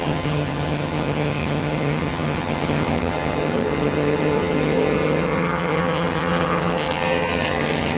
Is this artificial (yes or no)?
yes